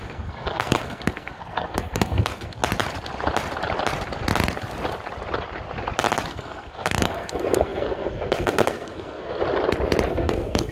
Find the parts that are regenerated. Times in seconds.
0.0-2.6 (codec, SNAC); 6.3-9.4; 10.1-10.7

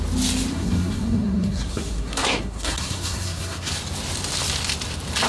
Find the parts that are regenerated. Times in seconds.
0.5-3.7 (codec, SNAC)

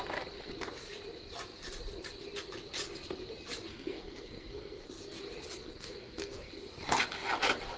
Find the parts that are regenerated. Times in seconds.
3.7-4.9 (codec, SNAC); 5.6-6.5

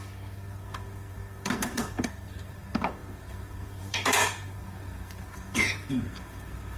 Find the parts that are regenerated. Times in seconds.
0.0-6.8 (codec, SNAC)

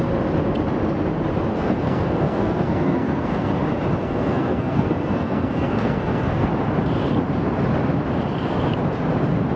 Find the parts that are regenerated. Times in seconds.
1.5-3.5 (codec, SNAC); 4.0-6.5

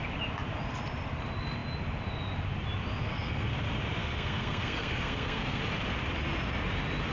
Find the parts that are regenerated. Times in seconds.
3.0-3.5 (codec, SNAC); 4.0-5.6

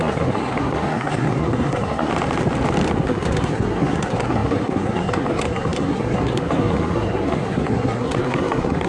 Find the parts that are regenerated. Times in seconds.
0.0-2.1 (codec, SNAC); 3.0-8.9

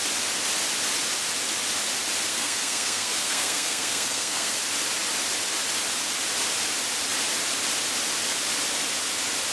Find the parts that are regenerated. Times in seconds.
2.3-4.6 (codec, SNAC)